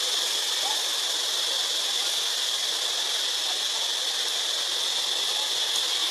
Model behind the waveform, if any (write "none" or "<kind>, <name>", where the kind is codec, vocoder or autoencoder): none